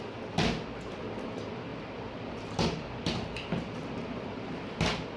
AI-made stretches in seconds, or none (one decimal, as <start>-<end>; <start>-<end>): 1.7-4.8